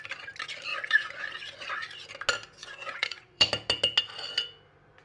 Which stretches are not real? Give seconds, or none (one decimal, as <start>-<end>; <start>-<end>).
0.7-1.3; 2.6-3.5